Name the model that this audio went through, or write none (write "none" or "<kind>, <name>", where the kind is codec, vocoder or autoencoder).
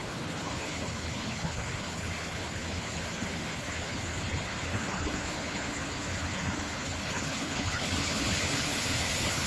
codec, HILCodec